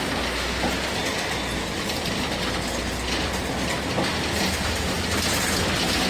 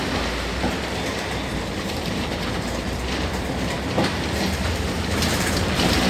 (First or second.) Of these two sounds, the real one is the first